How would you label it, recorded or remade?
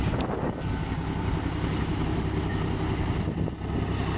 recorded